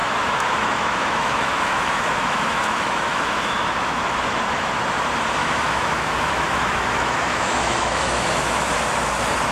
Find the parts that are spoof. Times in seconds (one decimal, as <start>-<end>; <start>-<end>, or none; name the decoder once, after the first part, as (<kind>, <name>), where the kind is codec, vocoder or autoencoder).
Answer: 0.0-4.7 (autoencoder, DAC-VAE); 5.4-8.7